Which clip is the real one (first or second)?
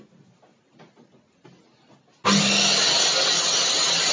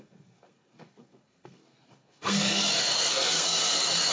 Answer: first